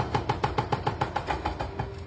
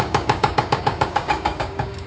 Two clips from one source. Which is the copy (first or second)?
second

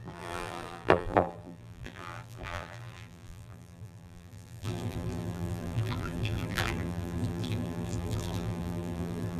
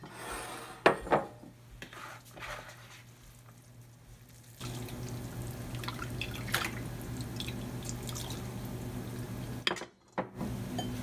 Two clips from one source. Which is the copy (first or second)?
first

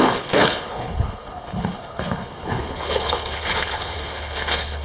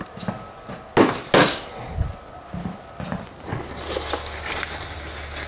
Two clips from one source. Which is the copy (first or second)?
first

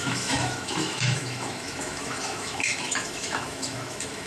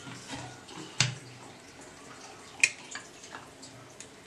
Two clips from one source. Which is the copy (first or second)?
first